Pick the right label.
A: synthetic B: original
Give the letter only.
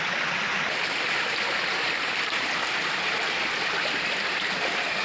B